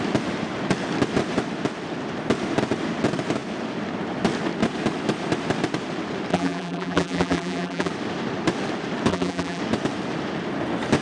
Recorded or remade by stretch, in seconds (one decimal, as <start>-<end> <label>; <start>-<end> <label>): 0.0-6.3 recorded; 6.3-7.9 remade; 7.9-9.1 recorded; 9.1-9.6 remade; 9.6-11.0 recorded